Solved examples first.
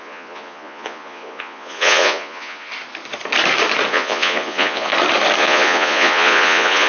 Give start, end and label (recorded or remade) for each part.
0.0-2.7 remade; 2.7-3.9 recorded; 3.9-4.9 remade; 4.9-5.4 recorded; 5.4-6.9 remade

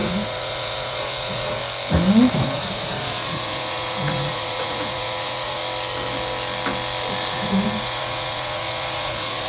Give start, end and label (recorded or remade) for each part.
0.0-1.6 remade; 1.6-2.3 recorded; 2.3-5.6 remade; 5.6-7.3 recorded; 7.3-9.5 remade